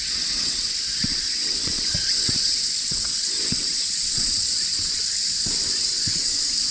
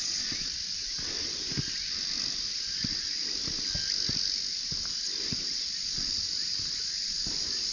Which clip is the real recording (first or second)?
second